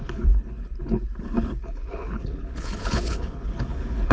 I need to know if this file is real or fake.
fake